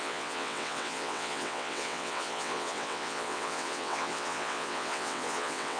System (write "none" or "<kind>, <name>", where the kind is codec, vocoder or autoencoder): vocoder, WaveNeXt